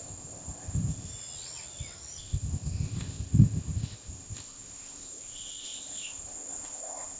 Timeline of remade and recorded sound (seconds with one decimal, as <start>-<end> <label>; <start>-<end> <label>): 0.0-1.1 remade; 1.1-2.2 recorded; 2.2-7.2 remade